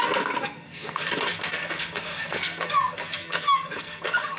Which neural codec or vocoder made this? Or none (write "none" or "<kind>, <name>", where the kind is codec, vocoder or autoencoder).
codec, SNAC